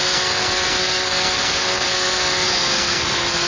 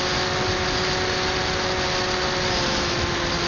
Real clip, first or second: second